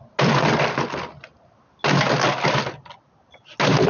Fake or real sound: real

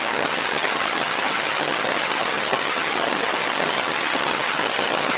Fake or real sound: fake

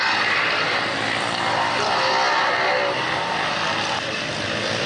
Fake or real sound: real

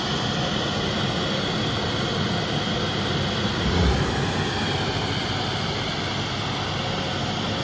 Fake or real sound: real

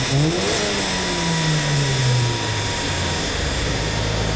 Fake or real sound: real